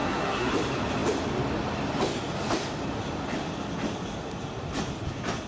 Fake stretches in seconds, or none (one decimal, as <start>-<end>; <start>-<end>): 0.0-0.5

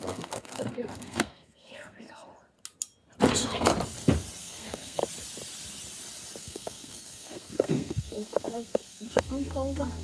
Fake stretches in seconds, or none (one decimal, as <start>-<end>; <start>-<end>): 0.0-2.3; 3.3-3.7; 4.4-5.0; 6.4-10.0